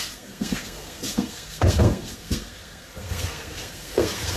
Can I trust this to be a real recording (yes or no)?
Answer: no